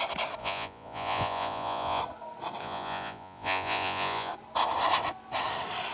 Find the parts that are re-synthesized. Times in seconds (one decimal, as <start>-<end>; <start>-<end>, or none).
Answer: 0.4-2.0; 2.6-4.3